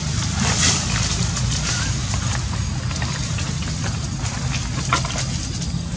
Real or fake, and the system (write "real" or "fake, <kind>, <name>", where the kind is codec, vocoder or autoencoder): real